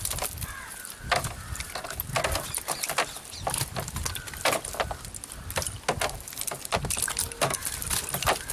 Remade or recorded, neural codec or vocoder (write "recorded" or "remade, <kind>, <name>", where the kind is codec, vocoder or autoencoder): recorded